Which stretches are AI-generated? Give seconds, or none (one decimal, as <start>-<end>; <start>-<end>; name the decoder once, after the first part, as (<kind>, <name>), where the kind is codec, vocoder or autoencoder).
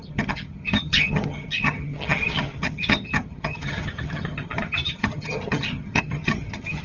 0.0-6.8 (vocoder, HiFi-GAN)